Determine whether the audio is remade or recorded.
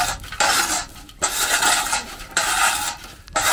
recorded